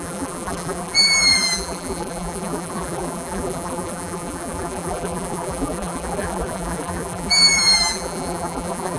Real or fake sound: fake